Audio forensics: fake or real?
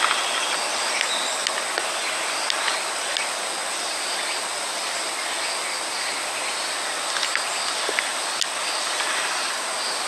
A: real